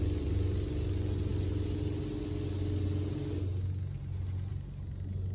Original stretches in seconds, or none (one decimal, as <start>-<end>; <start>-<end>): 0.0-5.3